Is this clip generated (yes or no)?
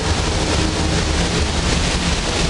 no